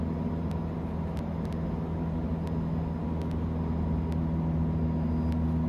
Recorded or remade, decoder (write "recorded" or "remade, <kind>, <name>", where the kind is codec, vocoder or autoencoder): recorded